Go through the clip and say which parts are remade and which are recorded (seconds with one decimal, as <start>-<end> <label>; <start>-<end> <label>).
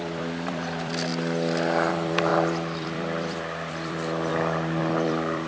0.0-1.1 remade; 1.1-1.9 recorded; 1.9-5.5 remade